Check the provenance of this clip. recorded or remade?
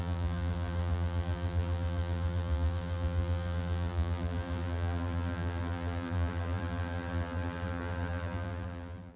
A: remade